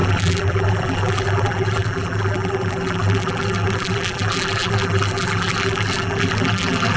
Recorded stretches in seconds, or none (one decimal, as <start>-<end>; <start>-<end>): none